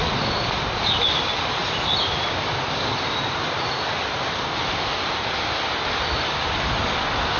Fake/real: real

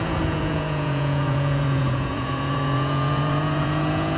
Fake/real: fake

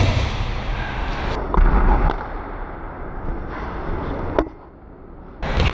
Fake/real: real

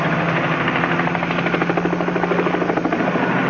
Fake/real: real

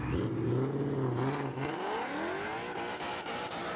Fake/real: real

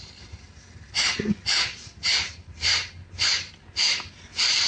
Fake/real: real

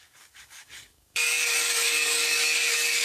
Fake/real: fake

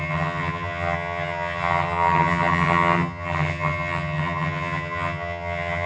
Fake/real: fake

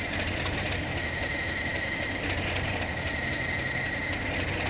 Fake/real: real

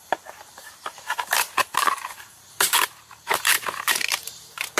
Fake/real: fake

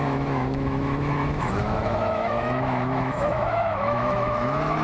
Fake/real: fake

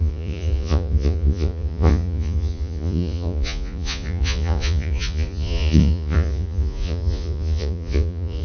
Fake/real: fake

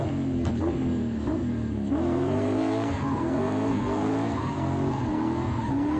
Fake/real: fake